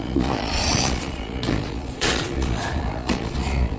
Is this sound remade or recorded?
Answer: remade